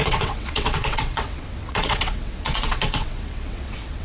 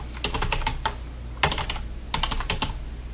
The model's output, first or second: first